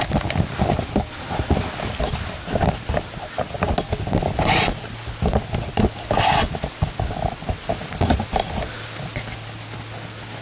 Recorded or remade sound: recorded